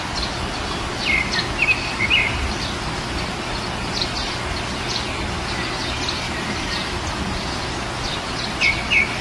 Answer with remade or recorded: recorded